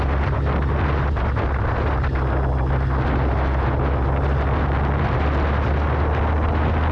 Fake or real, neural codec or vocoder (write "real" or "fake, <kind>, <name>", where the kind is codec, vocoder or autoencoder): real